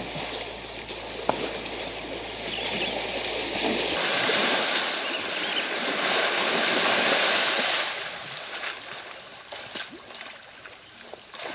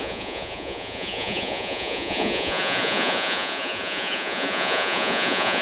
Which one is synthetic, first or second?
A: second